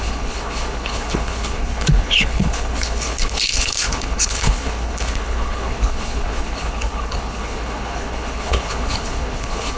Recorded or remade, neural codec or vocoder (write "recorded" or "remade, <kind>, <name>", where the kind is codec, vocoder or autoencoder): remade, codec, HILCodec